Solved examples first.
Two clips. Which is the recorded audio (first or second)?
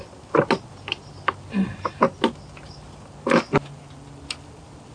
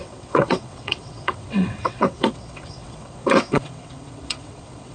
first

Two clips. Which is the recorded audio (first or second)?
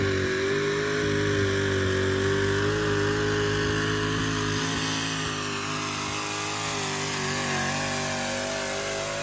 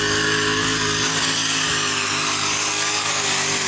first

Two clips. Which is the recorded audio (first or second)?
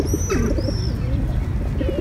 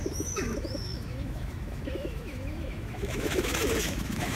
first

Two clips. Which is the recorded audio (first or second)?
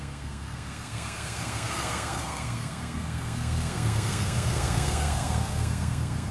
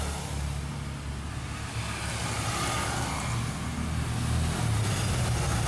second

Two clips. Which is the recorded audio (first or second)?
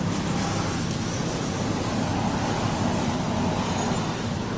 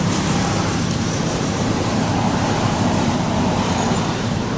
first